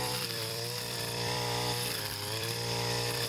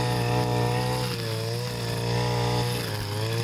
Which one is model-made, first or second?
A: first